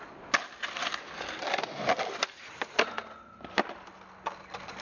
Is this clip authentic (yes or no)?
yes